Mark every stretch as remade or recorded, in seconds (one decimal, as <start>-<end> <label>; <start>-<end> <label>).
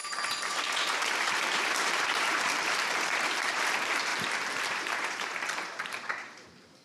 0.0-6.8 remade